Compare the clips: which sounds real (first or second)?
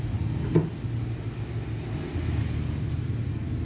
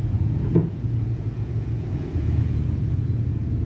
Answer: first